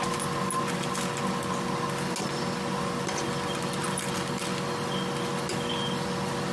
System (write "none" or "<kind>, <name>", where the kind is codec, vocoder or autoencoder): none